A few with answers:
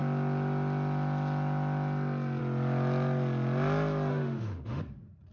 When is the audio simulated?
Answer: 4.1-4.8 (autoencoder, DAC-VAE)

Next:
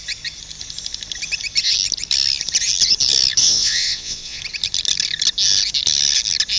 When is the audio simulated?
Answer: 3.4-4.4 (vocoder, WaveNeXt)